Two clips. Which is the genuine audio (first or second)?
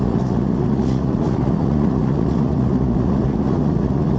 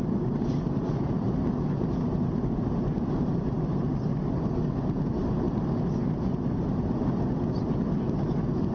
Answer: second